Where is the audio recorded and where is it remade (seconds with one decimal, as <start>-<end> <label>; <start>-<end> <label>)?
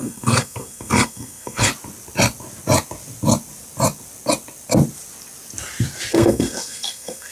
0.0-1.7 remade; 1.7-6.1 recorded; 6.1-7.3 remade